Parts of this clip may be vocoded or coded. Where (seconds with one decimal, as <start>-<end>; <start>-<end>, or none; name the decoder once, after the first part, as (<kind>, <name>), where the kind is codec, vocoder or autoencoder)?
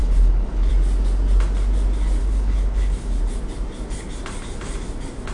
0.0-0.7 (codec, HILCodec); 2.2-3.2